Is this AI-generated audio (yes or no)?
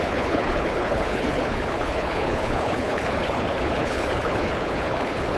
yes